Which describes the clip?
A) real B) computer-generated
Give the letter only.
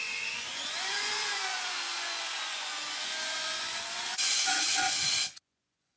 B